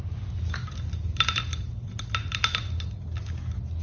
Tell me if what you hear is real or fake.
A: real